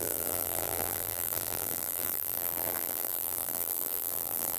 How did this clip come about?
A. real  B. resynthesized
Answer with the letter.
B